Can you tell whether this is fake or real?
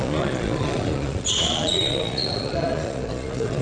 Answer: fake